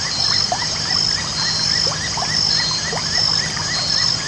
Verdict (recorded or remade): recorded